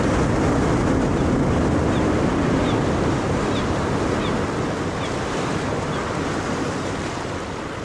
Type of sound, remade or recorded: recorded